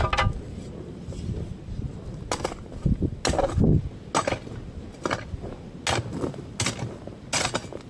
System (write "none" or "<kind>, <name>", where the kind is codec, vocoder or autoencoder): none